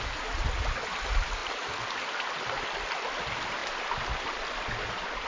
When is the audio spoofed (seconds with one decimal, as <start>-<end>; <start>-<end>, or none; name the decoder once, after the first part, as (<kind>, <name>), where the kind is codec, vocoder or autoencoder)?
none

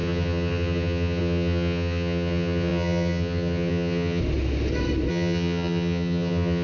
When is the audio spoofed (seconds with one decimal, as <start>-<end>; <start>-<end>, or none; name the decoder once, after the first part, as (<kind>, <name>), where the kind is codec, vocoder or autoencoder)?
0.0-4.2 (vocoder, HiFi-GAN); 5.1-6.6

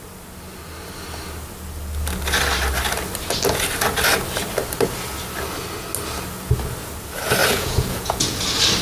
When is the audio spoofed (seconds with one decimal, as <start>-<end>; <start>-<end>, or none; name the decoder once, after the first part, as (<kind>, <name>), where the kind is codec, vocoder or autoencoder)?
7.4-8.2 (vocoder, Vocos)

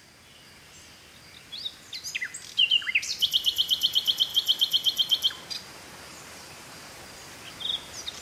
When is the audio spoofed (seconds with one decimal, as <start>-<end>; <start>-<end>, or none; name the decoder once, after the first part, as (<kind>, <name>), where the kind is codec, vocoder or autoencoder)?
4.3-5.3 (vocoder, BigVGAN v2); 6.1-7.0

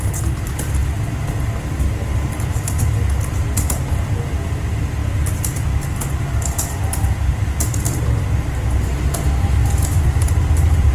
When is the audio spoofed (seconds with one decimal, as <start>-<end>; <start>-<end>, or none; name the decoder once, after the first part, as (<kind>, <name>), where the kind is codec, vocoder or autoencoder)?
none

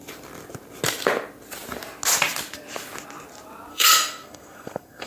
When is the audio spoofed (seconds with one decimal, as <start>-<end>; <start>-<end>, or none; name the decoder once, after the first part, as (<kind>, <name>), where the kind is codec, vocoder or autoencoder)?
3.7-5.1 (codec, SNAC)